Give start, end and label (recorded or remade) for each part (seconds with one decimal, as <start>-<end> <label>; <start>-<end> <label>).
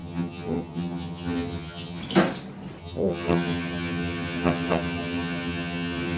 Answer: 0.0-2.0 remade; 2.0-2.8 recorded; 2.8-6.2 remade